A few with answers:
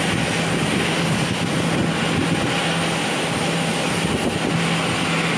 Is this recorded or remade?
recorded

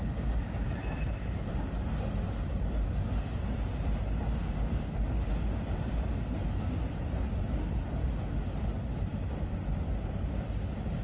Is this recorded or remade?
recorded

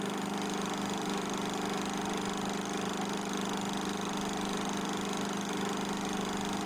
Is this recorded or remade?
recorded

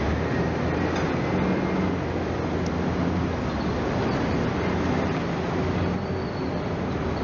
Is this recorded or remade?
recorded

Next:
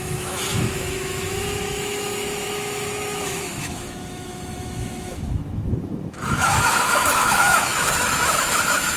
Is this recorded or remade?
remade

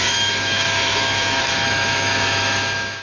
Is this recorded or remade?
remade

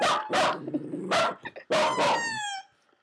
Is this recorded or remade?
recorded